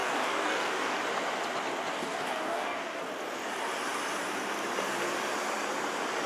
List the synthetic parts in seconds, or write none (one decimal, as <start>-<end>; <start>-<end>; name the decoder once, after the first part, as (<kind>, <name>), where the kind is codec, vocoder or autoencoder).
0.0-1.0 (codec, DAC); 1.9-3.0